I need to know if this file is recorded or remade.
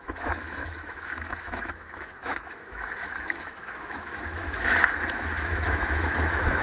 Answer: remade